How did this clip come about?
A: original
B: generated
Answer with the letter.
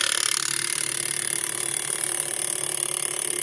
A